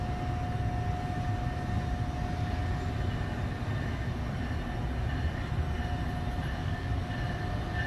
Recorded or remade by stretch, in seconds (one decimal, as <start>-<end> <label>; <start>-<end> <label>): 0.0-6.6 recorded; 6.6-7.1 remade; 7.1-7.9 recorded

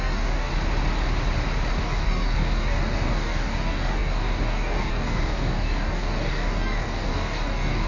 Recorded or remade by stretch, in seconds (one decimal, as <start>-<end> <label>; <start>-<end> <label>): 0.0-0.5 remade; 0.5-1.8 recorded; 1.8-7.9 remade